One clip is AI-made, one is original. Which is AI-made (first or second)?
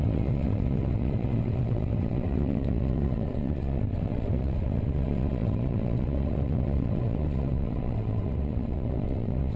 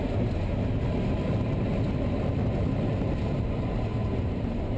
first